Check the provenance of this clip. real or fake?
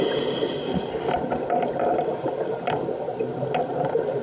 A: real